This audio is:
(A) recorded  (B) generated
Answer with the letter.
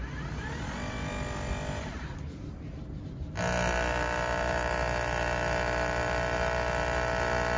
A